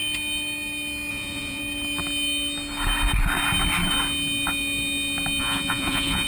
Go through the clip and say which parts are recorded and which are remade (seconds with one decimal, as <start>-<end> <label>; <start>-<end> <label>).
0.0-1.1 recorded; 1.1-1.6 remade; 1.6-5.4 recorded; 5.4-6.3 remade